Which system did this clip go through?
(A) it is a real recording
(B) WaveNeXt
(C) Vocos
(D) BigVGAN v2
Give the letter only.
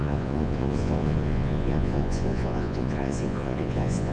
C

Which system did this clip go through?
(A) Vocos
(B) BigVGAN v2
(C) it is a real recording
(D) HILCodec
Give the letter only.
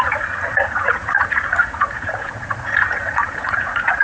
A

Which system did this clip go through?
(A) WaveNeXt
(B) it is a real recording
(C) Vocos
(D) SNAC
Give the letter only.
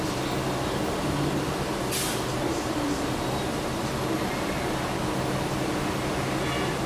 B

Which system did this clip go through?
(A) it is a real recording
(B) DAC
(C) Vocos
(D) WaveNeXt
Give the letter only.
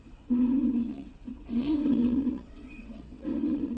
D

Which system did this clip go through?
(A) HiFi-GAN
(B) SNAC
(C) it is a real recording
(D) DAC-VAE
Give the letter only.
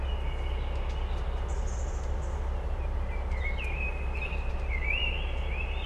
C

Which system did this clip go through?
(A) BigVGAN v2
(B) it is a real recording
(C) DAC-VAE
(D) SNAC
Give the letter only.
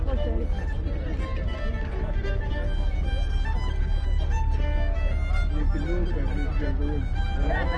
B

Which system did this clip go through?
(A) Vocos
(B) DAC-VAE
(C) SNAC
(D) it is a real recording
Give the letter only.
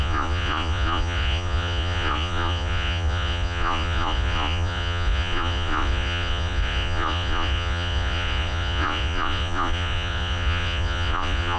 A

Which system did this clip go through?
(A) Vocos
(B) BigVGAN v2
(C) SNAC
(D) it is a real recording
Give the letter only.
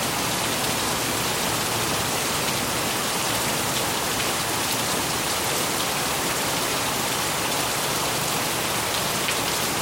B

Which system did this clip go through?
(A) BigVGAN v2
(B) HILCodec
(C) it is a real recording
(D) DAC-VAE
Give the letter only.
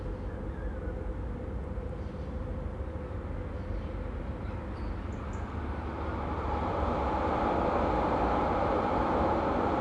C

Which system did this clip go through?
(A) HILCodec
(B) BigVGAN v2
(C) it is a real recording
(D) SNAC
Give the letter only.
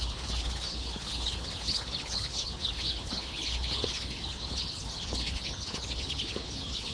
A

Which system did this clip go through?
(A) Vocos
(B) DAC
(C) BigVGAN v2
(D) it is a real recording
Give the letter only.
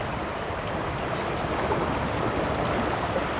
D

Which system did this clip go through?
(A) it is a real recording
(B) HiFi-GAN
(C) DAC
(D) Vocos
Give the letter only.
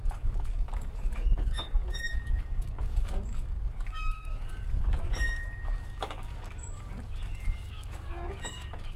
C